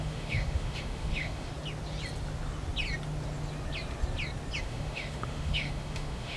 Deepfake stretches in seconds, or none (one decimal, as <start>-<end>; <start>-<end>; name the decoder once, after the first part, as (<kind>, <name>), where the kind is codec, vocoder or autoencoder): 0.0-1.5 (autoencoder, DAC-VAE); 4.6-6.4